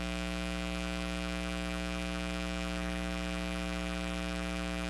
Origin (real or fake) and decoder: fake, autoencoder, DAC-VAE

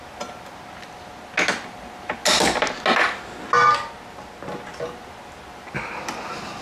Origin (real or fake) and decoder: real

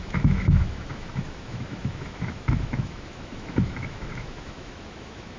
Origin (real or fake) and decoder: fake, autoencoder, DAC-VAE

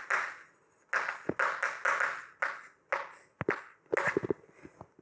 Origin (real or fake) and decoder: real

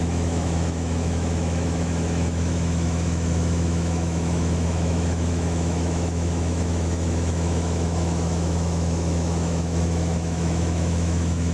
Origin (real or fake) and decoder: fake, autoencoder, DAC-VAE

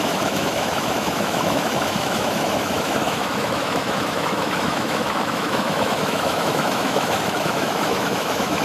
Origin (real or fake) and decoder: fake, autoencoder, DAC-VAE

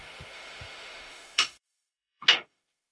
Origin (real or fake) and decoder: fake, autoencoder, DAC-VAE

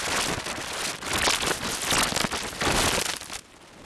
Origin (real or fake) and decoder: real